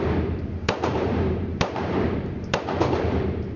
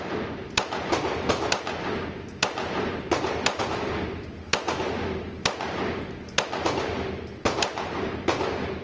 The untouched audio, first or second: second